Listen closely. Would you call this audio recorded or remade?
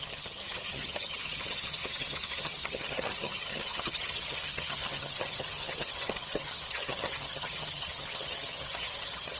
remade